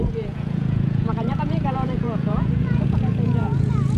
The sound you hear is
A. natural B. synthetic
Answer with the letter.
B